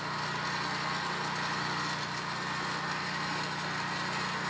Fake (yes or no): no